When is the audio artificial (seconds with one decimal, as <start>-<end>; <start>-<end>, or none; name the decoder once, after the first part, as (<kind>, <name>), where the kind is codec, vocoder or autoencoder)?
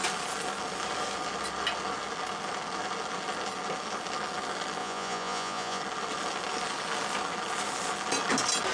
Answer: 4.8-5.8 (vocoder, Vocos)